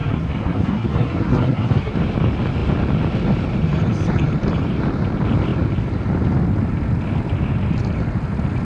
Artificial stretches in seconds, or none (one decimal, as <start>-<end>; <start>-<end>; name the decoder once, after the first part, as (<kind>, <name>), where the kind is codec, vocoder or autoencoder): 0.0-1.9 (codec, SNAC)